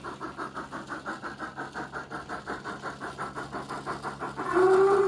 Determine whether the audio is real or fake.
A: real